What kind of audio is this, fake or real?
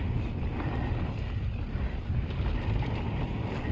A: real